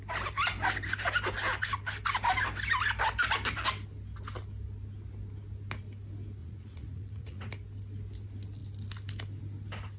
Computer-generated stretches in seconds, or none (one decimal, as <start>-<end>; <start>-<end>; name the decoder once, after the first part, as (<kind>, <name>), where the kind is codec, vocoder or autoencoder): 6.4-7.5 (vocoder, Vocos)